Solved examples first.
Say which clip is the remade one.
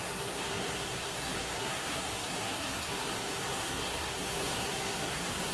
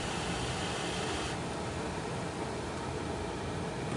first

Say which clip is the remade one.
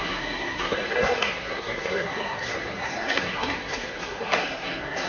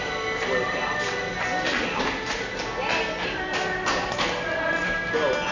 first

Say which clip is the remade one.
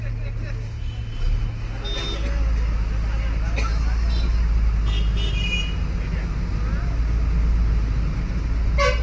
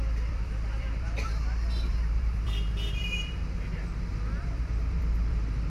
second